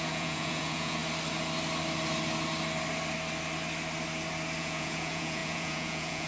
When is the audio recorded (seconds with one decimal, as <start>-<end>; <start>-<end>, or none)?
1.0-4.6